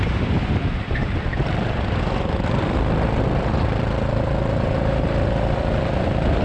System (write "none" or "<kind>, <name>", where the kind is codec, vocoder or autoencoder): vocoder, BigVGAN v2